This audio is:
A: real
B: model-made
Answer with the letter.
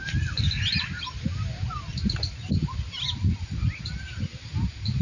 A